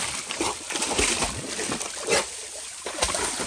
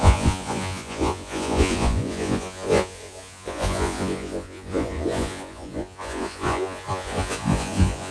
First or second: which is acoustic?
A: first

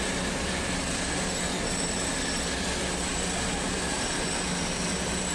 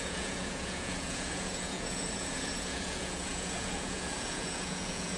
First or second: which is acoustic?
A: first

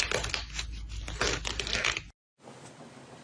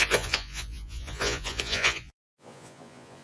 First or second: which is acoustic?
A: first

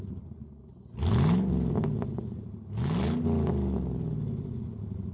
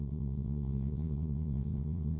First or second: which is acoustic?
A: first